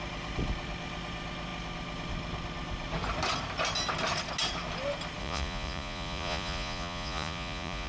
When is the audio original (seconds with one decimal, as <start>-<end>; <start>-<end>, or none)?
0.0-5.2